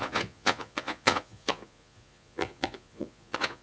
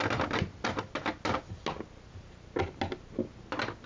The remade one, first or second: first